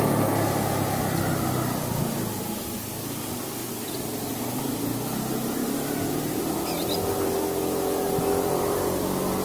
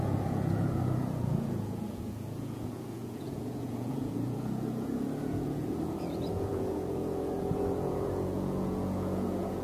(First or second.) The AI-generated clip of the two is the second